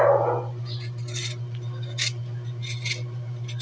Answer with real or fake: real